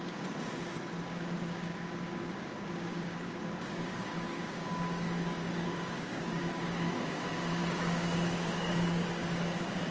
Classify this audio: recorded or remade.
remade